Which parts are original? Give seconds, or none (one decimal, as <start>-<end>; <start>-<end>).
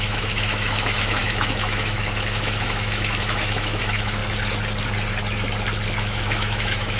4.2-6.0